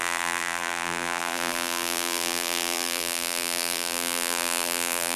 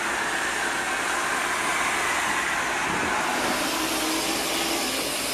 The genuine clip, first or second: second